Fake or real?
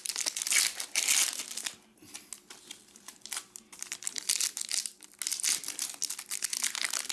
real